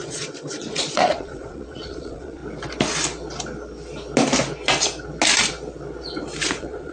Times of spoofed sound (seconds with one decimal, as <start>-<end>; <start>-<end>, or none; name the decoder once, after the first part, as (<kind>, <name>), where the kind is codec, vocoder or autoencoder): 0.0-2.4 (vocoder, Vocos); 6.5-6.9